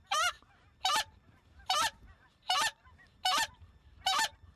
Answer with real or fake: fake